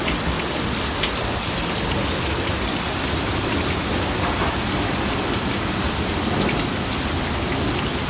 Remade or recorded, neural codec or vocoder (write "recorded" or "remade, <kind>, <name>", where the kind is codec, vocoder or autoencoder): recorded